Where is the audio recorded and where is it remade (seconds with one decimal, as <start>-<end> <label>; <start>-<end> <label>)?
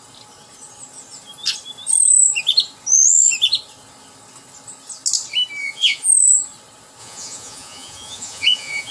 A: 0.0-5.6 recorded; 5.6-6.1 remade; 6.1-7.0 recorded; 7.0-8.9 remade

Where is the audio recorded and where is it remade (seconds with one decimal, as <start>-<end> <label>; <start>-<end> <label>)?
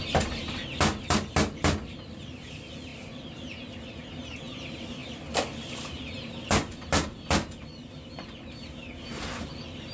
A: 0.0-9.9 recorded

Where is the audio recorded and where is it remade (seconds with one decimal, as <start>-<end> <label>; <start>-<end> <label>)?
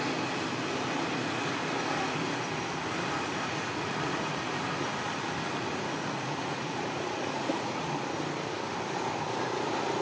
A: 0.0-3.3 recorded; 3.3-4.4 remade; 4.4-5.7 recorded; 5.7-8.0 remade; 8.0-10.0 recorded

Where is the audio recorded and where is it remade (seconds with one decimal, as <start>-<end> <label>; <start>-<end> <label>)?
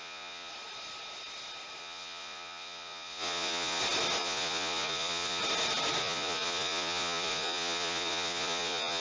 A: 0.0-0.5 remade; 0.5-1.8 recorded; 1.8-3.8 remade; 3.8-4.2 recorded; 4.2-5.4 remade; 5.4-6.0 recorded; 6.0-9.0 remade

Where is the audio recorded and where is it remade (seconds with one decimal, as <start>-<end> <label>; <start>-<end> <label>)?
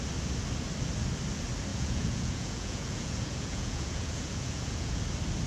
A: 0.0-1.7 recorded; 1.7-5.0 remade; 5.0-5.5 recorded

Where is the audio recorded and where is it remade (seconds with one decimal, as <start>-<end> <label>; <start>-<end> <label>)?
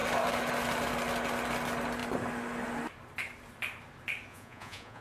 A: 0.0-4.3 recorded; 4.3-5.0 remade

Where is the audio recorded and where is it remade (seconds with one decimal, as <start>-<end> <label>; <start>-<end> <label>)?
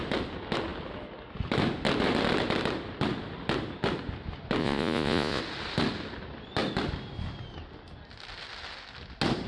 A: 0.0-4.6 recorded; 4.6-5.4 remade; 5.4-9.5 recorded